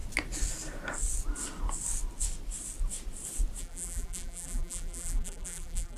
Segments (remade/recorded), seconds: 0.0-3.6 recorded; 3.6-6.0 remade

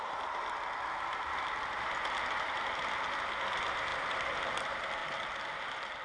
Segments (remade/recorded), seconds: 0.0-3.9 recorded; 3.9-4.6 remade; 4.6-6.0 recorded

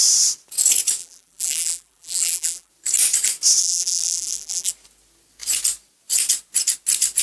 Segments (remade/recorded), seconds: 0.0-1.0 recorded; 1.0-2.7 remade; 2.7-3.6 recorded; 3.6-4.7 remade; 4.7-7.2 recorded

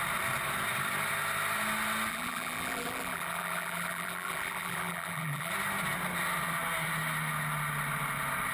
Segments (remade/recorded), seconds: 0.0-2.1 recorded; 2.1-5.5 remade; 5.5-8.5 recorded

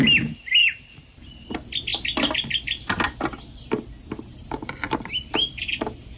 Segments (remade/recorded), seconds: 0.0-0.6 recorded; 0.6-1.5 remade; 1.5-6.2 recorded